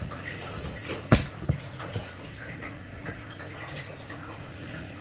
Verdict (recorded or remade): remade